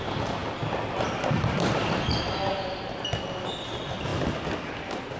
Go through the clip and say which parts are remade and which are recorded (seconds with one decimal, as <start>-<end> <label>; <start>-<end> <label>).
0.0-5.2 recorded